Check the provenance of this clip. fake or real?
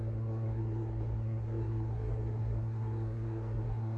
fake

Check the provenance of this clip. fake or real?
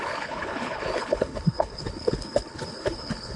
fake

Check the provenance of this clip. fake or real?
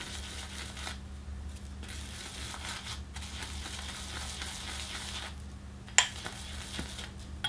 real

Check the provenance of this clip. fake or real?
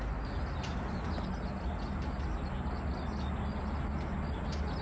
real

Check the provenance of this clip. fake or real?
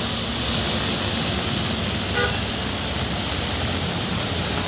real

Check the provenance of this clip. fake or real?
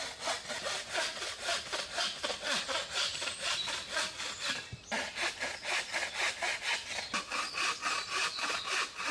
real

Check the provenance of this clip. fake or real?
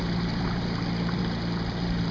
real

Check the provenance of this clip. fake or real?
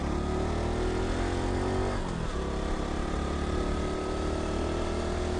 real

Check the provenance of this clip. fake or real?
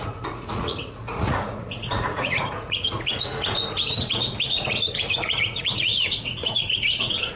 fake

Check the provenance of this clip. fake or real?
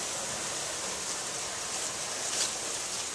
real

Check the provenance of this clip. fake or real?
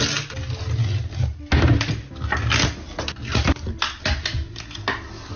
real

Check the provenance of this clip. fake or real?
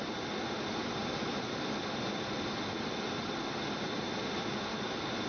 real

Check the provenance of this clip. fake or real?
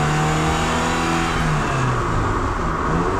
real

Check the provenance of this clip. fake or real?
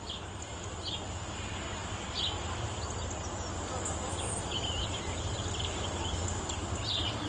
real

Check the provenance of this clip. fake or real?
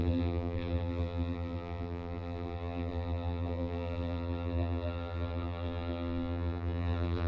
fake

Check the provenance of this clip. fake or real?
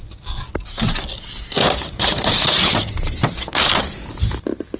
real